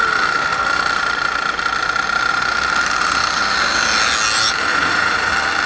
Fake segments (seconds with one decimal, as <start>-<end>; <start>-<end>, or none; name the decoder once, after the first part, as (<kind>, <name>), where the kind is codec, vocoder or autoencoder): 4.7-5.3 (vocoder, Vocos)